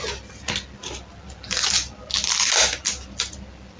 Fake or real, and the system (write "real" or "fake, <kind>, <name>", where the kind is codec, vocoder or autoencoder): real